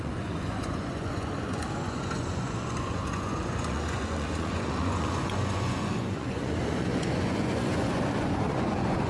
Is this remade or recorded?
remade